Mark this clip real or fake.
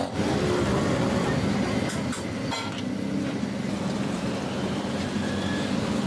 real